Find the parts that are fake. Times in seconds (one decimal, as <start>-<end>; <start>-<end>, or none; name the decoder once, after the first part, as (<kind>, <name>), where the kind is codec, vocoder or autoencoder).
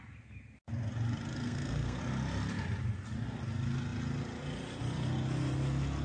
1.4-2.0 (codec, SNAC)